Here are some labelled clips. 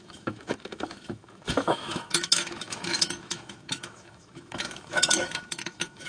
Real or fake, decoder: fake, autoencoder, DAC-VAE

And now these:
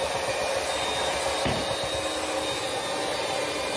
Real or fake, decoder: real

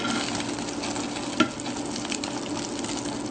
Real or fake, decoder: real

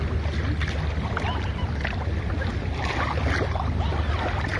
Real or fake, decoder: real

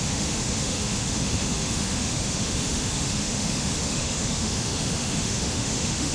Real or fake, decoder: fake, autoencoder, DAC-VAE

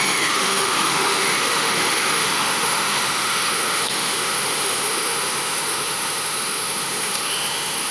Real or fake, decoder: fake, autoencoder, DAC-VAE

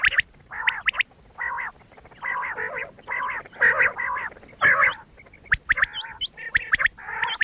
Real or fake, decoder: real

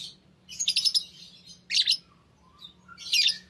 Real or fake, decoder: real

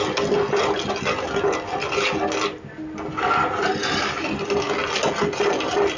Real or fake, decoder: real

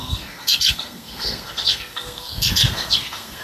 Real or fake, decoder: fake, codec, SNAC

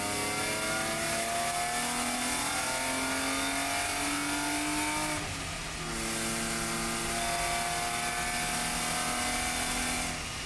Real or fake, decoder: real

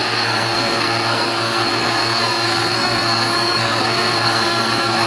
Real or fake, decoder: fake, codec, SNAC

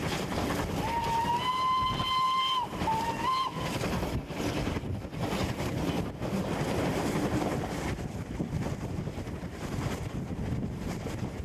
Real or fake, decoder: real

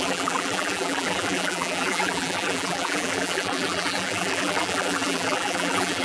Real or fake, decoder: fake, vocoder, BigVGAN v2